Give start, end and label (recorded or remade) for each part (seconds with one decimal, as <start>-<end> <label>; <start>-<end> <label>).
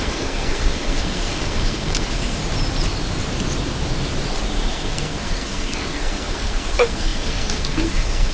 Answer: 0.0-2.4 remade; 2.4-4.7 recorded; 4.7-8.3 remade